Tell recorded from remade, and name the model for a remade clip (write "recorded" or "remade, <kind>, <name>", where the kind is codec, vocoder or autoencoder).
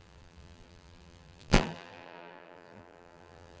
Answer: remade, vocoder, BigVGAN v2